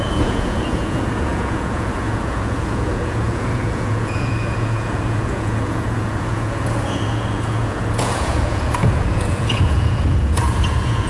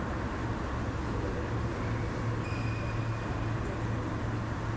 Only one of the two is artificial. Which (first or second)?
first